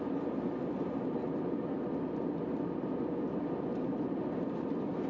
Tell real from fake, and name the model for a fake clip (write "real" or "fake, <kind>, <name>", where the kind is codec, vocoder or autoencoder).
real